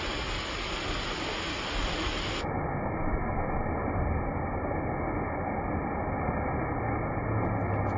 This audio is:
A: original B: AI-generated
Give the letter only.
A